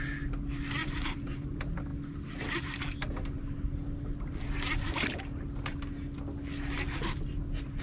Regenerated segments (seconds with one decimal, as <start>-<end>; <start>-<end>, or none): 0.8-1.5